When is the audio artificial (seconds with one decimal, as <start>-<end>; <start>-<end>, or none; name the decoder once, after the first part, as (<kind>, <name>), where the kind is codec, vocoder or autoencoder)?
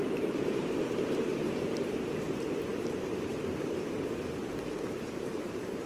0.0-5.9 (vocoder, BigVGAN v2)